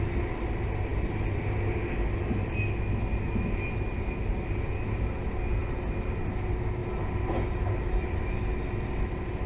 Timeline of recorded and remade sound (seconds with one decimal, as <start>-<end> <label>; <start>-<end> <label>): 0.0-9.5 recorded